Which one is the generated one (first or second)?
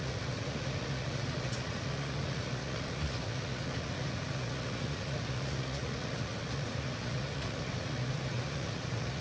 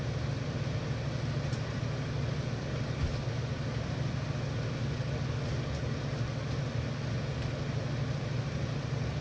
first